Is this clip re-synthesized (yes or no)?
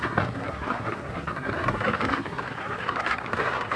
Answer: yes